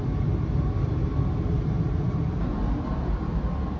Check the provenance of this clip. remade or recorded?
recorded